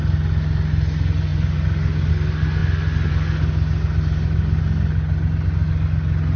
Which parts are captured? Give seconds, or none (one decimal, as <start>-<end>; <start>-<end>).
0.0-6.4